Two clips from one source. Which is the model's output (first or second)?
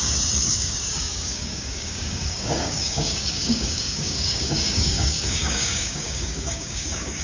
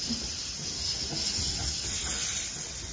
first